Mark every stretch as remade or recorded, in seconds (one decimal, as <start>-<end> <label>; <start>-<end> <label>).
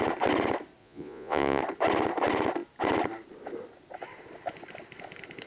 0.0-0.8 recorded; 0.8-1.6 remade; 1.6-5.5 recorded